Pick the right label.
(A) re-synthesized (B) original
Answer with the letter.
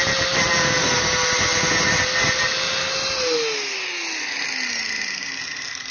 B